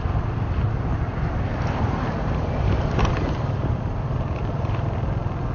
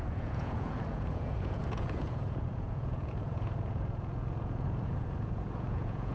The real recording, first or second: first